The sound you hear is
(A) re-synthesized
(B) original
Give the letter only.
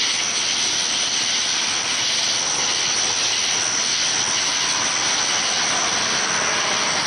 B